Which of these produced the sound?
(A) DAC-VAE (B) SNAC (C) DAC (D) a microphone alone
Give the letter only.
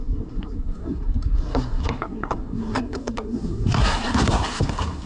B